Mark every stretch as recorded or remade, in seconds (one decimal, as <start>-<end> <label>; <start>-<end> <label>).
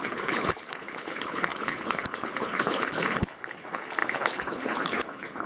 0.0-5.5 remade